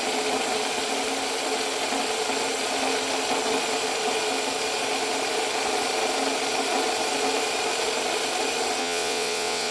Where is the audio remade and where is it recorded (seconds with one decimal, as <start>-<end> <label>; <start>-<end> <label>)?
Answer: 0.0-8.8 recorded; 8.8-9.7 remade